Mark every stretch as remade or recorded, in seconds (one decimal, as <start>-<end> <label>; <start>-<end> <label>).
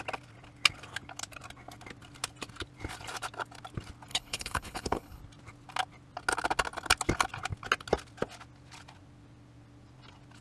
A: 0.0-4.1 recorded; 4.1-5.2 remade; 5.2-10.4 recorded